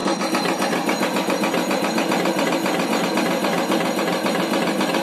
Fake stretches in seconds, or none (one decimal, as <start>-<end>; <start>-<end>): none